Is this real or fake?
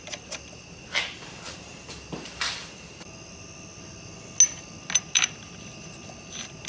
real